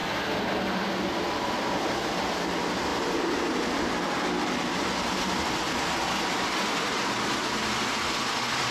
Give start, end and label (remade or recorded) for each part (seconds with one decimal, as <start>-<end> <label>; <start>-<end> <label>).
0.0-8.7 recorded